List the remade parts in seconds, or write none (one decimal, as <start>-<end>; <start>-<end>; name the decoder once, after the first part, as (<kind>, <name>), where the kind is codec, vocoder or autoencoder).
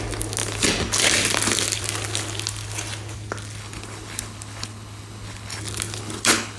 3.6-5.6 (codec, HILCodec); 6.0-6.6